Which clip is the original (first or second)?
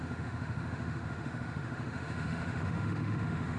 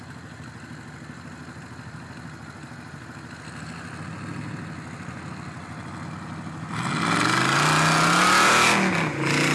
second